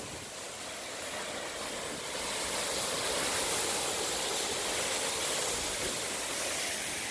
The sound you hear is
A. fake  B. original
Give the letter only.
B